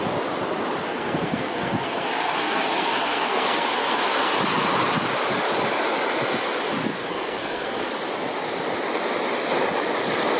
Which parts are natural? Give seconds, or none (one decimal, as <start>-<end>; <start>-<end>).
0.0-0.9; 4.3-7.0; 7.9-10.4